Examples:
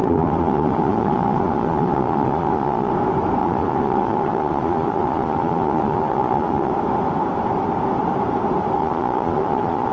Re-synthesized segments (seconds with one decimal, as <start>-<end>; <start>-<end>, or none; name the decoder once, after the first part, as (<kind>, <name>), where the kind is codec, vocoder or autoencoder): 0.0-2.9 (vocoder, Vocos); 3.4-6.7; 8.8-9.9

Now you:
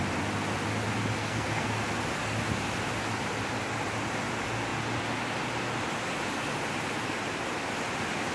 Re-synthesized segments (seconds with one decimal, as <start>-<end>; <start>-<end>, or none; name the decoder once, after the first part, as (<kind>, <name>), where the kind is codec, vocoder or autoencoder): 1.2-1.7 (codec, SNAC)

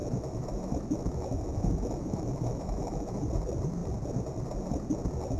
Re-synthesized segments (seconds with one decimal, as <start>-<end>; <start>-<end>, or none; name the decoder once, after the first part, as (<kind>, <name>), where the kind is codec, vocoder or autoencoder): 0.0-3.2 (autoencoder, DAC-VAE)

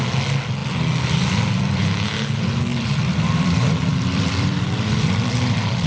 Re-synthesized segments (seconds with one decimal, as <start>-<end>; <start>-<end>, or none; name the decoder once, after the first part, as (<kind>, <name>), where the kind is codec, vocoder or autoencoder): 2.7-5.9 (vocoder, BigVGAN v2)

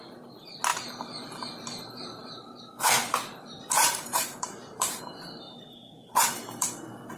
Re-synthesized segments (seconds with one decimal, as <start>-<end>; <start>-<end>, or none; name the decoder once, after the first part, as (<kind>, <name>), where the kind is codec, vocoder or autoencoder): 0.7-5.0 (vocoder, BigVGAN v2); 6.0-6.7